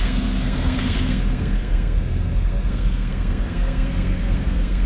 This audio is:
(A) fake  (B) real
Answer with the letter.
A